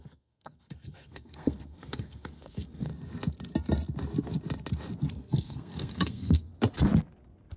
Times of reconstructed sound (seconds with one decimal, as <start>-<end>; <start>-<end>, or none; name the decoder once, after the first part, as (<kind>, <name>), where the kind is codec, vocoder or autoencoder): 0.0-2.9 (codec, SNAC); 5.1-6.5